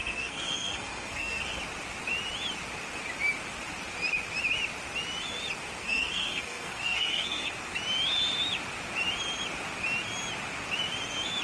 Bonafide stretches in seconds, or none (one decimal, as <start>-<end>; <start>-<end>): 1.6-5.8; 7.5-11.4